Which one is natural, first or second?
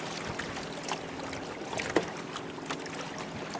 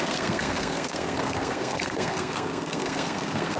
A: first